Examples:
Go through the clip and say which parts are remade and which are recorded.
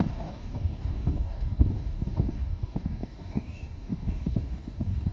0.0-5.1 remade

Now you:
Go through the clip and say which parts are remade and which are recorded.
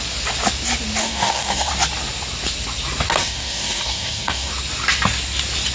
0.0-1.0 recorded; 1.0-1.7 remade; 1.7-3.2 recorded; 3.2-4.5 remade; 4.5-5.7 recorded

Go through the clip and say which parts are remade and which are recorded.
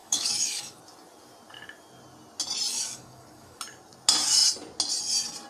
0.0-0.8 remade; 0.8-2.7 recorded; 2.7-3.6 remade; 3.6-5.5 recorded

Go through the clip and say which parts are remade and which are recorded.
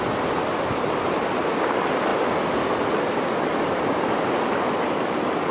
0.0-5.5 recorded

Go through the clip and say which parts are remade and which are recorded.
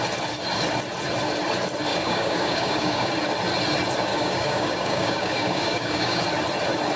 0.0-1.9 recorded; 1.9-3.1 remade; 3.1-4.1 recorded; 4.1-6.2 remade; 6.2-7.0 recorded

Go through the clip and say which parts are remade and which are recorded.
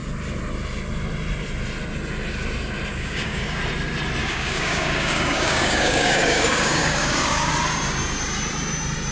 0.0-2.9 recorded; 2.9-3.6 remade; 3.6-4.2 recorded; 4.2-7.5 remade; 7.5-9.1 recorded